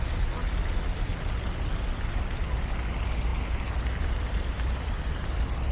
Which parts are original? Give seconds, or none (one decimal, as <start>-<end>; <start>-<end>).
0.0-5.7